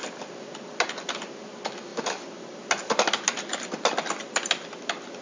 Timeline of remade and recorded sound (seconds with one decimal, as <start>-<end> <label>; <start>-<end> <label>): 0.0-5.2 recorded